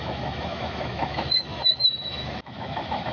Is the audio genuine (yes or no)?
no